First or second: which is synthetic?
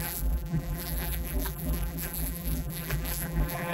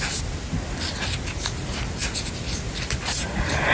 first